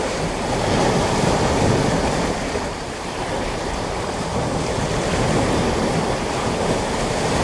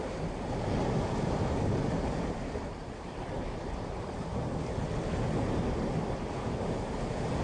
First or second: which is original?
second